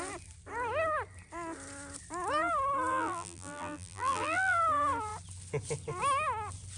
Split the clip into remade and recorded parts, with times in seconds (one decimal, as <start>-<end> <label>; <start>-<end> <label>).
0.0-2.9 recorded; 2.9-4.6 remade; 4.6-6.8 recorded